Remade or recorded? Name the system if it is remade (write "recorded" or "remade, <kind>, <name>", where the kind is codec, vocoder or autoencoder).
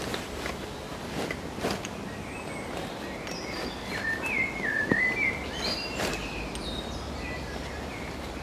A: recorded